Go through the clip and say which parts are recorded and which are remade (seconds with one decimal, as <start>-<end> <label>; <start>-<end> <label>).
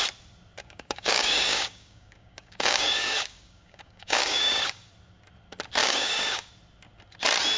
0.0-0.6 recorded; 0.6-4.9 remade; 4.9-5.8 recorded; 5.8-6.5 remade; 6.5-7.6 recorded